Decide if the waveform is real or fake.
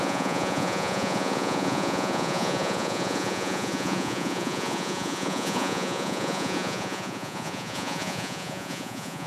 fake